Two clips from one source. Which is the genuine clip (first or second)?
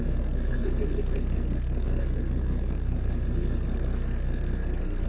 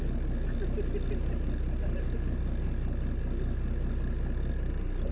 second